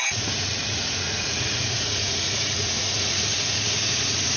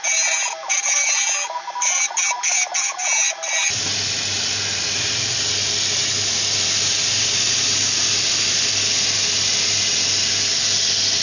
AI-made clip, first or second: first